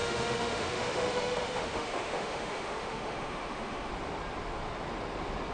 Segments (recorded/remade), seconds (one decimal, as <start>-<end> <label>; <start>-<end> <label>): 0.0-3.9 remade; 3.9-5.5 recorded

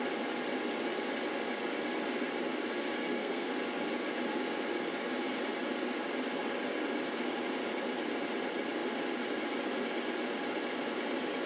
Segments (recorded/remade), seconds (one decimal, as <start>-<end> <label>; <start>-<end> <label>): 0.0-3.0 recorded; 3.0-3.5 remade; 3.5-11.5 recorded

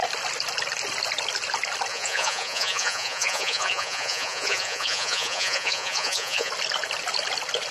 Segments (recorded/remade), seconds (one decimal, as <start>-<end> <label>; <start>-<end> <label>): 0.0-1.9 recorded; 1.9-6.5 remade; 6.5-7.7 recorded

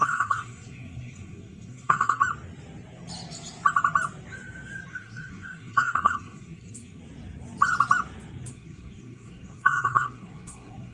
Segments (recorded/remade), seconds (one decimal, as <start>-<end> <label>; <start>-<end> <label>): 0.0-2.2 remade; 2.2-4.9 recorded; 4.9-7.0 remade; 7.0-8.5 recorded; 8.5-10.9 remade

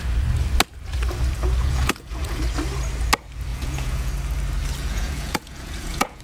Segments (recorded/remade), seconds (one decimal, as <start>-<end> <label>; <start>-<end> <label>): 0.0-1.6 recorded; 1.6-2.4 remade; 2.4-3.5 recorded; 3.5-4.1 remade; 4.1-4.8 recorded; 4.8-6.2 remade